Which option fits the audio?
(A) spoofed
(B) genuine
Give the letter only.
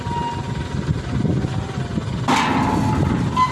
B